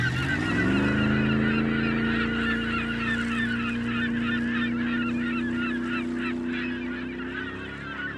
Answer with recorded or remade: recorded